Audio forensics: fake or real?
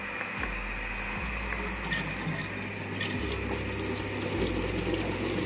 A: real